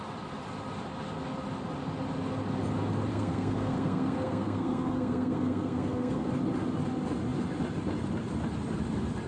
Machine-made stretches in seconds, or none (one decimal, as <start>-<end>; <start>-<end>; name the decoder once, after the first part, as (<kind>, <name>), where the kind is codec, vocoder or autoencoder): 3.1-6.3 (codec, SNAC)